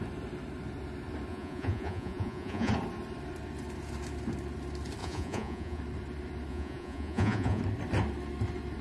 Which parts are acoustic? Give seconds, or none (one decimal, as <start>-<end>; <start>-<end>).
0.0-1.3; 2.7-5.0; 5.8-6.5; 7.6-8.8